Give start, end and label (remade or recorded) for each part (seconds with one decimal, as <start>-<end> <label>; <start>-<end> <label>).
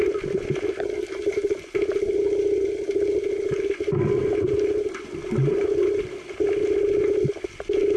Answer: 0.0-8.0 recorded